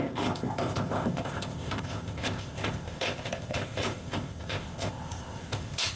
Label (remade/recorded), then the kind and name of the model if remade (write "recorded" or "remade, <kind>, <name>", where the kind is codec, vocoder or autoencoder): remade, codec, ZipCodec